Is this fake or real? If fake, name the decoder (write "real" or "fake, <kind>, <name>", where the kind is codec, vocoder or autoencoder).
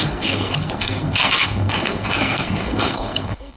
fake, codec, SNAC